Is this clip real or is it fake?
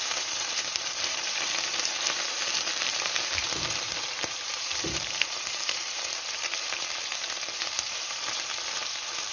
fake